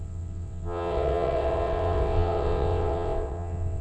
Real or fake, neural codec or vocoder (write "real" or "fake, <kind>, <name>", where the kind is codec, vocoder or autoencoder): fake, vocoder, WaveNeXt